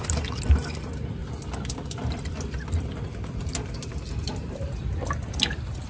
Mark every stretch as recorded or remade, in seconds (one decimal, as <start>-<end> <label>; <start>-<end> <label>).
0.0-1.2 recorded; 1.2-4.7 remade; 4.7-5.9 recorded